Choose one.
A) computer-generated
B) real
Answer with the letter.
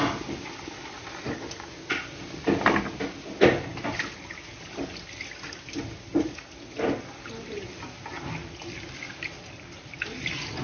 B